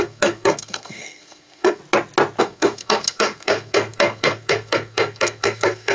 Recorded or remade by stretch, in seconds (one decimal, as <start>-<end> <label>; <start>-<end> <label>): 0.0-1.8 remade; 1.8-2.4 recorded; 2.4-5.9 remade